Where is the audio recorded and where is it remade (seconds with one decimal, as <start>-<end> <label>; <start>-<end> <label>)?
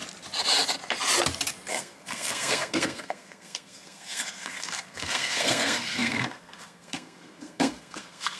0.0-1.7 recorded; 1.7-8.4 remade